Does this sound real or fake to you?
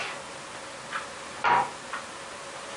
real